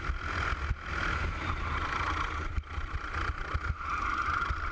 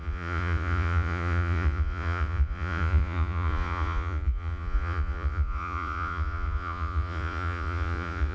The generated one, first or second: second